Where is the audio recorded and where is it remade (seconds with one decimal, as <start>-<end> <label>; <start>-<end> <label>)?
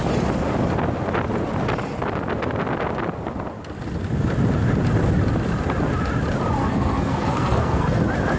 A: 0.0-6.6 recorded; 6.6-8.0 remade; 8.0-8.4 recorded